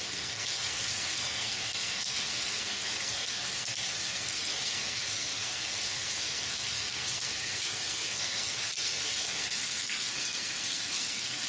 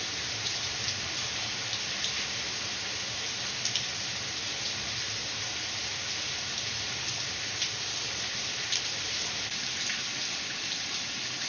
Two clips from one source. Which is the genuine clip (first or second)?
second